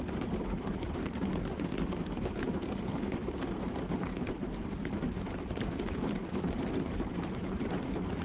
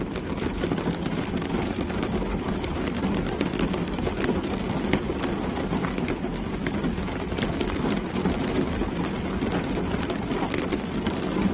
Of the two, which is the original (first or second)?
second